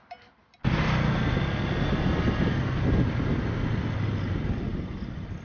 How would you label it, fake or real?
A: real